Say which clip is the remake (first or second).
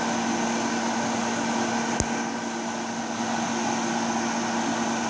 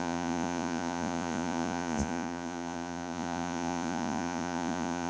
second